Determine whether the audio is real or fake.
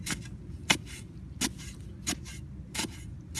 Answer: real